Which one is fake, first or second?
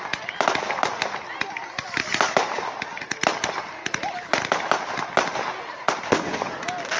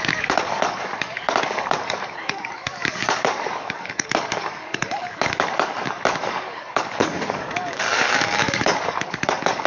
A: second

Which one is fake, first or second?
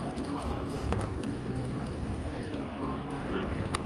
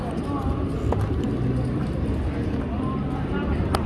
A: first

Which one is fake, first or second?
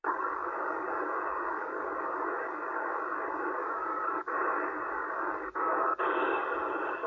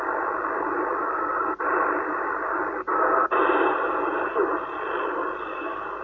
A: first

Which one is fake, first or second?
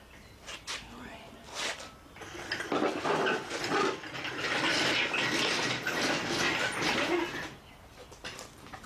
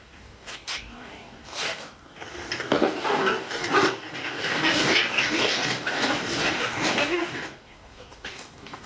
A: second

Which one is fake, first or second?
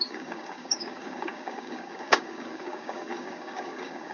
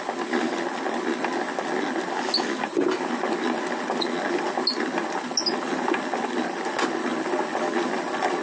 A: first